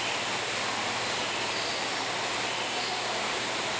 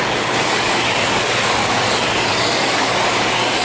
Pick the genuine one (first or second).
first